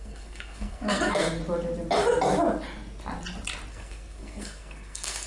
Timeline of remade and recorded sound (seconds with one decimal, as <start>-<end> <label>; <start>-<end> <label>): 0.0-1.4 remade; 1.4-3.7 recorded; 3.7-5.3 remade